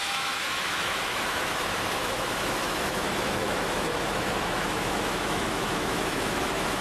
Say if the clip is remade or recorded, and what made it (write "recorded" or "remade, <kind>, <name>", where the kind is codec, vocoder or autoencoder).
remade, autoencoder, DAC-VAE